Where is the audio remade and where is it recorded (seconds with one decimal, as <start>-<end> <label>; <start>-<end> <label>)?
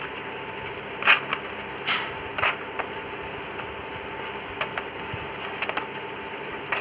0.0-6.8 recorded